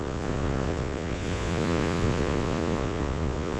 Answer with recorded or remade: remade